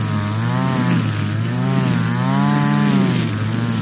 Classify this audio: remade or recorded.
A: recorded